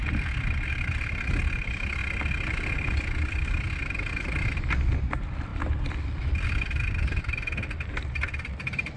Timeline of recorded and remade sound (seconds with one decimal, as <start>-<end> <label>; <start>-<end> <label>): 0.0-2.0 remade; 2.0-5.1 recorded; 5.1-9.0 remade